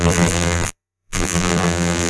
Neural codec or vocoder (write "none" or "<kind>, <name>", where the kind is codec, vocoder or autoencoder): vocoder, BigVGAN v2